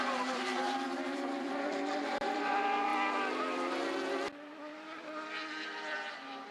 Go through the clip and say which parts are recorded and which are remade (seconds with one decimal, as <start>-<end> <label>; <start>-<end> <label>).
0.0-2.9 remade; 2.9-6.1 recorded; 6.1-6.5 remade